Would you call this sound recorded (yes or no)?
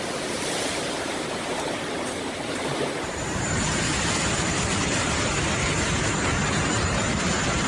no